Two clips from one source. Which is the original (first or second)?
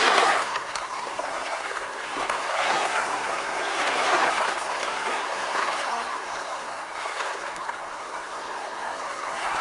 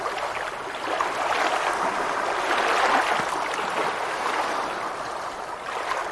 second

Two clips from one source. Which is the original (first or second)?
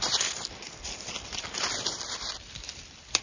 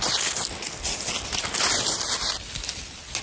second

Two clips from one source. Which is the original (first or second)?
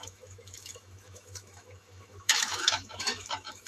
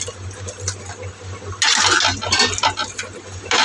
second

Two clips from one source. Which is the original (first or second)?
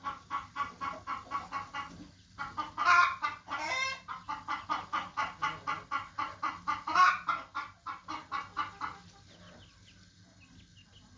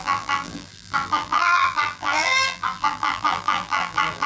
first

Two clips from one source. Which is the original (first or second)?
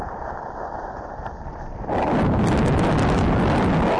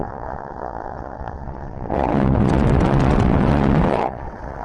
first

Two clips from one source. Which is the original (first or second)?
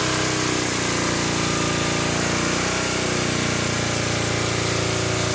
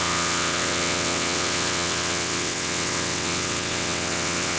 first